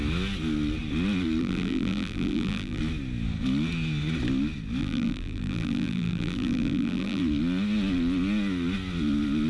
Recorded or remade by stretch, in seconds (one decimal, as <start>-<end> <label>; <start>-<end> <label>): 0.0-1.4 recorded; 1.4-2.8 remade; 2.8-4.8 recorded; 4.8-7.2 remade; 7.2-9.5 recorded